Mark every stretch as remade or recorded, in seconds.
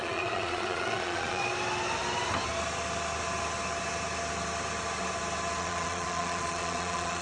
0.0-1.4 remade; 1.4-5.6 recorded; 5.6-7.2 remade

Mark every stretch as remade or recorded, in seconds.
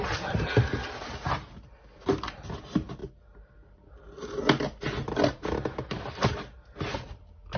0.0-7.6 recorded